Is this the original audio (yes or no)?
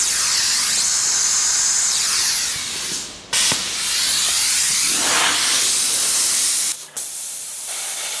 yes